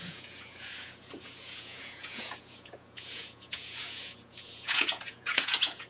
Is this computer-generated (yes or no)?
yes